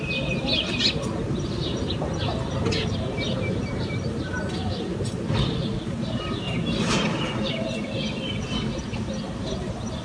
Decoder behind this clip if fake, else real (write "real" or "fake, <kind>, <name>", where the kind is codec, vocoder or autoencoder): real